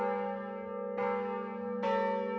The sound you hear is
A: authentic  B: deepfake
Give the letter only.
A